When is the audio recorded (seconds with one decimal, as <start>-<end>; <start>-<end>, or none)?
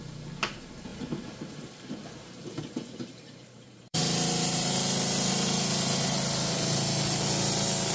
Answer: 0.0-0.9; 4.0-7.9